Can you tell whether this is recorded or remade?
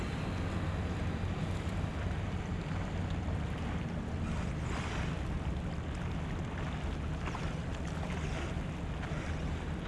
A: recorded